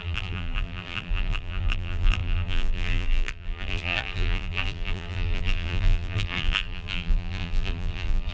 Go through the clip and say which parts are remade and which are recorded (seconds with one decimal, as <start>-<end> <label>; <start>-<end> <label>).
0.0-8.3 remade